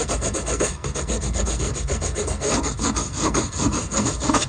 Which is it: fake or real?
fake